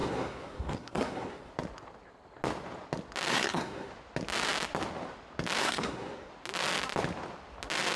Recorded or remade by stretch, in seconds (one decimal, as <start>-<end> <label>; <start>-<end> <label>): 0.0-1.5 remade; 1.5-3.3 recorded; 3.3-3.9 remade; 3.9-5.6 recorded; 5.6-6.3 remade; 6.3-8.0 recorded